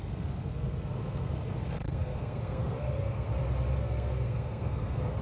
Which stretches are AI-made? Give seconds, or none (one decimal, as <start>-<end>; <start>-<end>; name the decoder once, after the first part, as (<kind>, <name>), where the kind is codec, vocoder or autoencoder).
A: 0.0-3.3 (codec, SNAC); 3.8-5.2